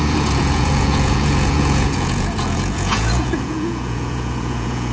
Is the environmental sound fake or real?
fake